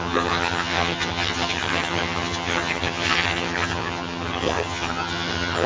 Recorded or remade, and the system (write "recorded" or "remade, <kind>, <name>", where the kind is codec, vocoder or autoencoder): remade, vocoder, HiFi-GAN